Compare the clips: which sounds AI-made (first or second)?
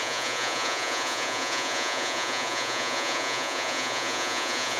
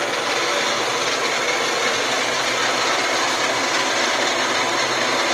first